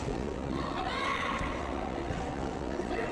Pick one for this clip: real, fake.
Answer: fake